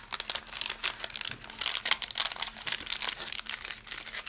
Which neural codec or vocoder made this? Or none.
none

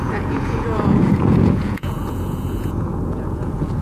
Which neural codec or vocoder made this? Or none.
vocoder, Vocos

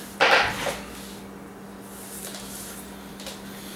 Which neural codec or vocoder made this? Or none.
none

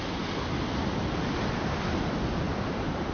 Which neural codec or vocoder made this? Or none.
none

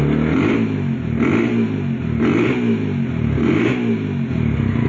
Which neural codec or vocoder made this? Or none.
none